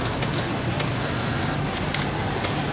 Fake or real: real